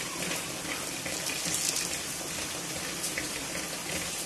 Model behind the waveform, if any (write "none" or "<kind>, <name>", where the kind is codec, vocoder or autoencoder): none